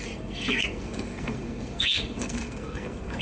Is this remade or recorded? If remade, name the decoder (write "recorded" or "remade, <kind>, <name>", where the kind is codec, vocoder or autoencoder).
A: remade, codec, SNAC